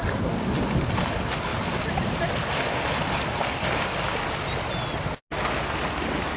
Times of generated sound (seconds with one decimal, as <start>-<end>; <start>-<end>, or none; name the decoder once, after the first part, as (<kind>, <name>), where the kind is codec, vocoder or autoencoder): none